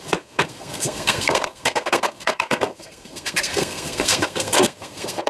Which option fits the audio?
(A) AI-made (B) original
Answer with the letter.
A